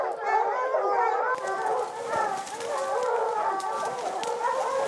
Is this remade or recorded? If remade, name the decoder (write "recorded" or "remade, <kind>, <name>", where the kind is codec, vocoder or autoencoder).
recorded